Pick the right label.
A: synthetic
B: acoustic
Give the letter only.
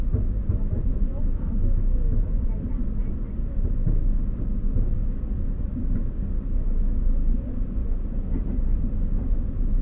B